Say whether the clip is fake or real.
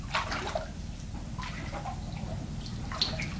real